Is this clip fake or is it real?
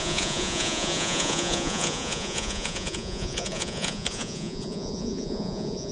fake